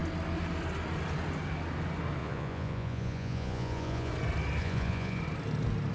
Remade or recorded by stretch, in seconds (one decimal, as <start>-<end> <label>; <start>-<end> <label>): 0.0-2.2 recorded; 2.2-4.1 remade; 4.1-4.6 recorded; 4.6-5.2 remade; 5.2-5.9 recorded